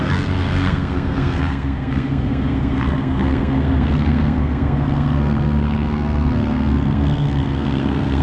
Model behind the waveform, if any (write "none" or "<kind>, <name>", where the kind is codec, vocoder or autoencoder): codec, SNAC